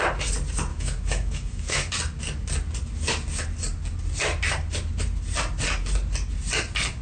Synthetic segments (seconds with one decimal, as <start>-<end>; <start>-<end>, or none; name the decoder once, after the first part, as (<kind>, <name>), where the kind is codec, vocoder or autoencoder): 0.7-1.9 (autoencoder, DAC-VAE)